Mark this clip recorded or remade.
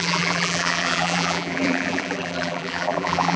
remade